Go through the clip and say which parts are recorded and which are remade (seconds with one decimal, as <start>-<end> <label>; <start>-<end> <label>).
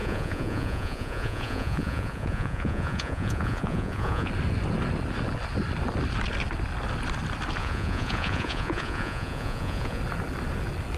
0.0-4.3 remade; 4.3-7.6 recorded; 7.6-10.0 remade; 10.0-11.0 recorded